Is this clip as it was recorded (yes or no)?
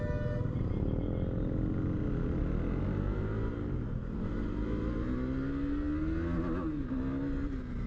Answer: yes